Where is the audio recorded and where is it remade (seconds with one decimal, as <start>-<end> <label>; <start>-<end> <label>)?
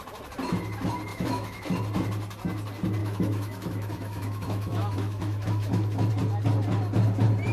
0.0-1.1 recorded; 1.1-1.7 remade; 1.7-3.0 recorded; 3.0-6.1 remade; 6.1-7.5 recorded